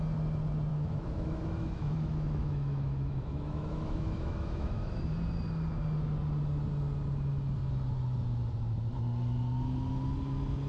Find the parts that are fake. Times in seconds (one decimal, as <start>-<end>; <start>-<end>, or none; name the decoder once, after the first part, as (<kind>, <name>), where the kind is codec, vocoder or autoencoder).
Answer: 0.7-5.0 (autoencoder, DAC-VAE)